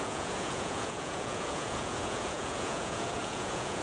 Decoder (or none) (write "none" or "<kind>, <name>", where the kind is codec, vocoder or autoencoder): vocoder, Vocos